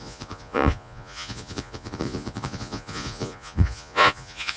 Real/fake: fake